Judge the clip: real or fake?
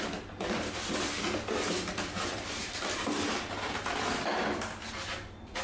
fake